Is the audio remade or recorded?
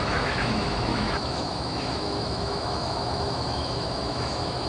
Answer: remade